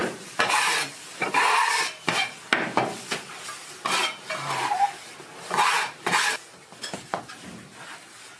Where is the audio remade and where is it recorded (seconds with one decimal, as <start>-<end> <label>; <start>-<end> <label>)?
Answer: 0.0-2.1 remade; 2.1-3.6 recorded; 3.6-4.3 remade; 4.3-8.4 recorded